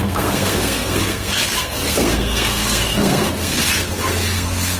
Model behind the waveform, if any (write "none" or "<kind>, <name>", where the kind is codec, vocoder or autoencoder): codec, SNAC